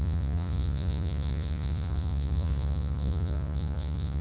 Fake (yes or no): yes